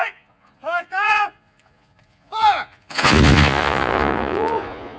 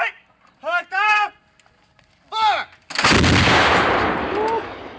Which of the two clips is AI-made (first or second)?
first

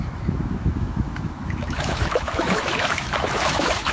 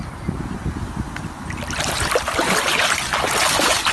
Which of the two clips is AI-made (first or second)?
first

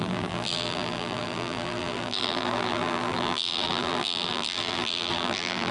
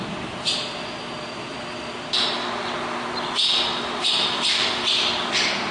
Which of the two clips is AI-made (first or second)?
first